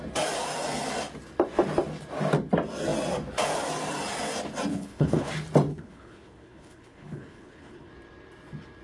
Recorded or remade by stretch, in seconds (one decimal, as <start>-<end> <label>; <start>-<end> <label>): 0.0-4.7 recorded; 4.7-5.3 remade; 5.3-5.7 recorded; 5.7-7.9 remade; 7.9-8.8 recorded